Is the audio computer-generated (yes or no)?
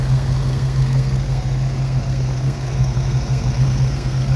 yes